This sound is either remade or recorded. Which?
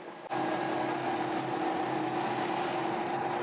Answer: recorded